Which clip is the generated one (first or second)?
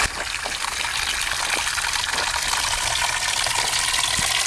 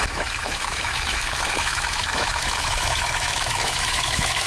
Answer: second